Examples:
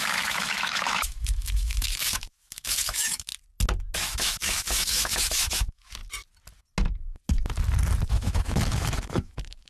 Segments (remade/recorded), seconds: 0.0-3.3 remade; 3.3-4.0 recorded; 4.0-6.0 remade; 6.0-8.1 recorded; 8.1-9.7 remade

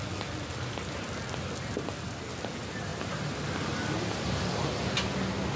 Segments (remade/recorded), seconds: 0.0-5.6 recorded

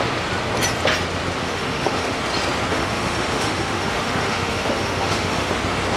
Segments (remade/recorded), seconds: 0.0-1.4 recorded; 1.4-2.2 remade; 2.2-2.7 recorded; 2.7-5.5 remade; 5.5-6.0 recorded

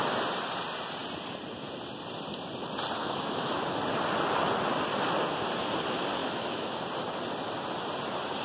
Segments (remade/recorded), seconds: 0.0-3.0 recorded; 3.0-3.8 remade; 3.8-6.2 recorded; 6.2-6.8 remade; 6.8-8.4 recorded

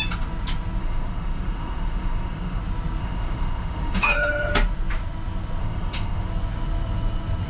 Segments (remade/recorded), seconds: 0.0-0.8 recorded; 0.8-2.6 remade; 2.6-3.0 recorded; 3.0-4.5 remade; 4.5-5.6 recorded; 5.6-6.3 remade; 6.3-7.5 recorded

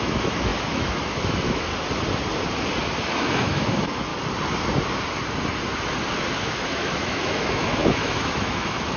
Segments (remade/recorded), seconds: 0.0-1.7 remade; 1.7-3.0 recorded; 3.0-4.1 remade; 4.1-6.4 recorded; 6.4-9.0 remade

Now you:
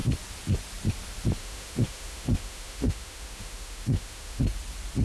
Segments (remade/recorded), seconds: 0.0-1.4 recorded; 1.4-4.4 remade; 4.4-5.0 recorded